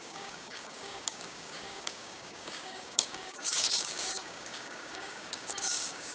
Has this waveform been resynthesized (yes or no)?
yes